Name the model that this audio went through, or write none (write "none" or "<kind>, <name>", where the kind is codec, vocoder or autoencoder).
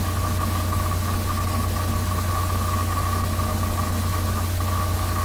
none